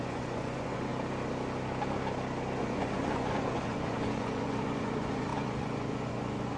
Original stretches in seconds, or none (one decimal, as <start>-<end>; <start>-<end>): 0.9-2.6